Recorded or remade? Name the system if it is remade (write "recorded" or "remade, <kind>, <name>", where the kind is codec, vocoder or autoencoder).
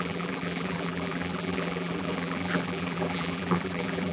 remade, vocoder, BigVGAN v2